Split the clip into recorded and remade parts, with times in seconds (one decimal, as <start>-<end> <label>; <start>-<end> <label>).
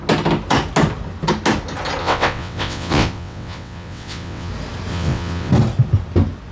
0.0-2.0 recorded; 2.0-4.5 remade; 4.5-4.9 recorded; 4.9-5.5 remade; 5.5-6.5 recorded